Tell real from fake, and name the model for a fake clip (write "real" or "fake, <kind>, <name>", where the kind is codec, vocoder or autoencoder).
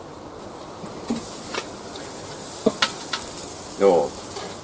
real